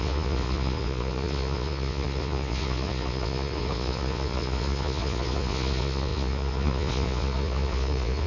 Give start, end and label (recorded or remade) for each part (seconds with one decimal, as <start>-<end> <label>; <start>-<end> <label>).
0.0-8.3 remade